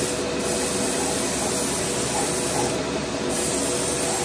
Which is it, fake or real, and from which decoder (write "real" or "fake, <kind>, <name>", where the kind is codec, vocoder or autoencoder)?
real